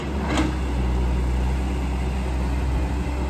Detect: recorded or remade recorded